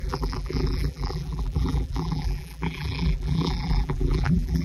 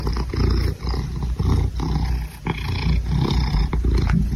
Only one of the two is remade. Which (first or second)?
first